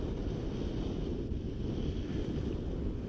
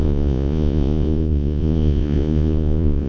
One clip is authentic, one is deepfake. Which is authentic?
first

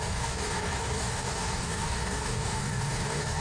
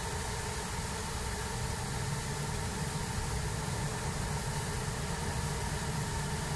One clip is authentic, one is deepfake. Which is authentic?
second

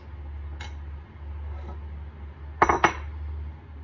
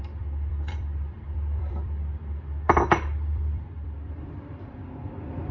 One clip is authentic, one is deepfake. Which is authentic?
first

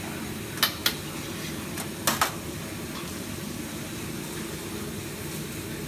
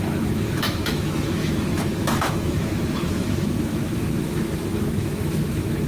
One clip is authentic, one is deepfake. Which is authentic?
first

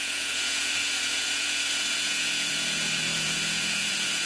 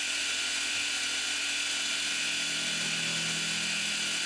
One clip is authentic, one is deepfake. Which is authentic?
second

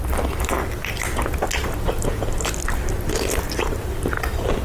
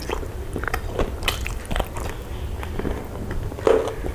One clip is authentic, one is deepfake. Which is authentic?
first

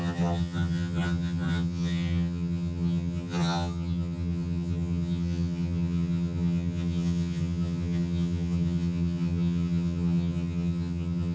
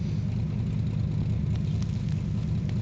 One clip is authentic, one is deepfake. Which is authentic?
second